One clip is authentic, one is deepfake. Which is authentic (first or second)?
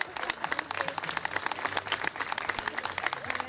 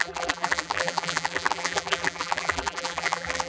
first